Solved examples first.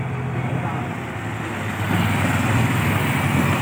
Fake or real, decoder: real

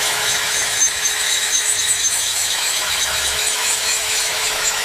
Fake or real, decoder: fake, autoencoder, DAC-VAE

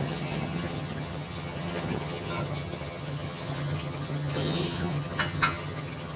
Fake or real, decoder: fake, vocoder, HiFi-GAN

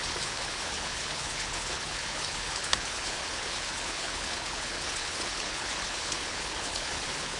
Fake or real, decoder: fake, codec, HILCodec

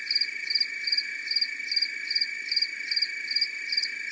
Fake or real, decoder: real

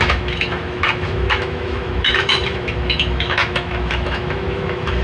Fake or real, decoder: fake, autoencoder, DAC-VAE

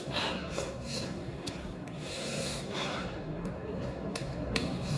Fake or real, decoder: fake, codec, SNAC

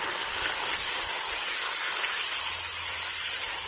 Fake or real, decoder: fake, vocoder, BigVGAN v2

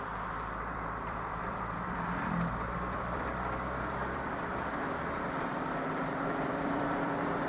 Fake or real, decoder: fake, vocoder, BigVGAN v2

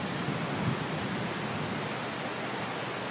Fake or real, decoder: real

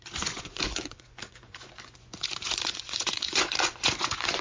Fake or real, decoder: fake, vocoder, Vocos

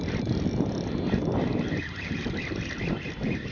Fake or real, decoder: real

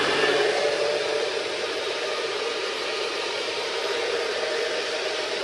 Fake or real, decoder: fake, vocoder, BigVGAN v2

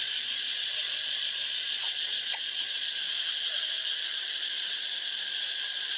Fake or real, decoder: fake, vocoder, Vocos